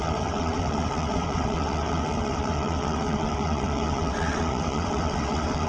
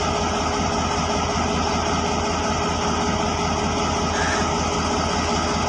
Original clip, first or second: second